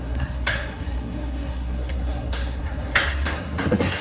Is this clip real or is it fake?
fake